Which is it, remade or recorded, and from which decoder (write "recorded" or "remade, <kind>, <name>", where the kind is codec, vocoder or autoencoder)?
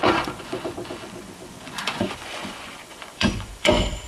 remade, vocoder, Vocos